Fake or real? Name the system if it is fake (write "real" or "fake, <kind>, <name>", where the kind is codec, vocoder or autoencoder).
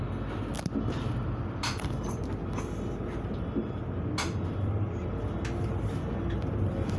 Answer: real